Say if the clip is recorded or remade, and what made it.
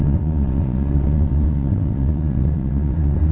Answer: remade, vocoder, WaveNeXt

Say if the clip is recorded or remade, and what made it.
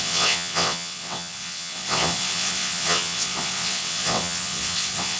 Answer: remade, vocoder, WaveNeXt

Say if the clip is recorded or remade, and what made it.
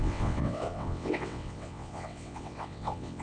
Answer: remade, vocoder, WaveNeXt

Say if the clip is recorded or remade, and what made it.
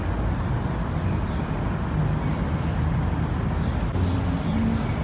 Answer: recorded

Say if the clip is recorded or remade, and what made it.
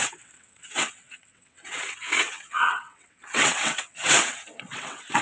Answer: remade, vocoder, WaveNeXt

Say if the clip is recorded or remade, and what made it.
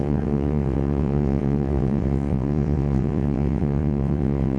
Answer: remade, vocoder, WaveNeXt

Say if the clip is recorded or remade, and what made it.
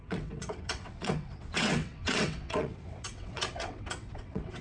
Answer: remade, vocoder, WaveNeXt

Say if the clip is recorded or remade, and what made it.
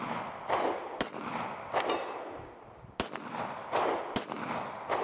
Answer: recorded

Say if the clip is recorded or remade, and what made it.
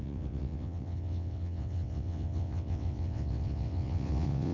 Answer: remade, vocoder, WaveNeXt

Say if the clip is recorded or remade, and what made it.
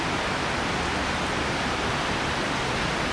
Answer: recorded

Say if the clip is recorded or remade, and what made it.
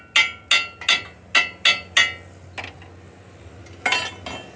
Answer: recorded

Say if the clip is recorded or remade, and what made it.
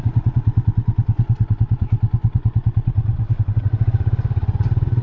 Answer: remade, vocoder, WaveNeXt